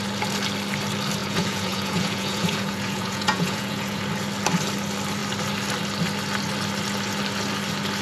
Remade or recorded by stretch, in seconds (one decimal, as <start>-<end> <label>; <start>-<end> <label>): 0.0-1.2 recorded; 1.2-4.0 remade; 4.0-8.0 recorded